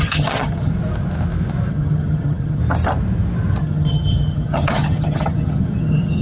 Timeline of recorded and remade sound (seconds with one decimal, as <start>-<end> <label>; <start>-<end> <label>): 0.0-0.7 remade; 0.7-1.7 recorded; 1.7-2.6 remade; 2.6-3.6 recorded; 3.6-6.2 remade